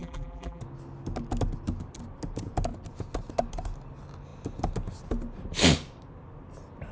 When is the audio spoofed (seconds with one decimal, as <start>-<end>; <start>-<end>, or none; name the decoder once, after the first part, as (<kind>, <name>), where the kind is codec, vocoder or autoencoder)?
0.0-0.6 (vocoder, BigVGAN v2)